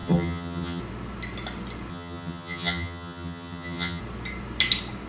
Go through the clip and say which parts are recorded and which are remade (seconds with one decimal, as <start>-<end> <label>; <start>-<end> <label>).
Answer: 0.0-0.8 remade; 0.8-1.9 recorded; 1.9-4.0 remade; 4.0-5.1 recorded